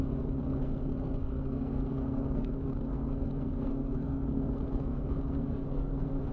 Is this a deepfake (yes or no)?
yes